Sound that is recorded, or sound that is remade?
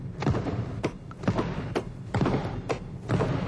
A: recorded